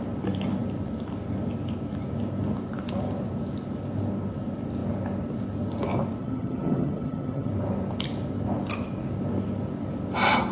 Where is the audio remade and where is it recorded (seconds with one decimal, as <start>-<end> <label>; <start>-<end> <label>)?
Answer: 0.0-6.2 recorded; 6.2-7.5 remade; 7.5-10.5 recorded